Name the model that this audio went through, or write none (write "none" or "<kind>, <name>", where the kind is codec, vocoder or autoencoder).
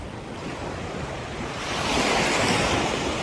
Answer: none